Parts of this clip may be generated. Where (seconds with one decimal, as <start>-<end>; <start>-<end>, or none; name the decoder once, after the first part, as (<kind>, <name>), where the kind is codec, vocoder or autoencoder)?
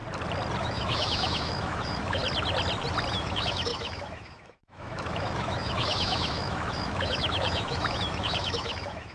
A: 0.6-2.2 (autoencoder, DAC-VAE); 3.1-9.1